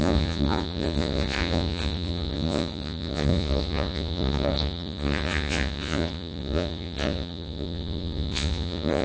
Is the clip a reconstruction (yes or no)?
yes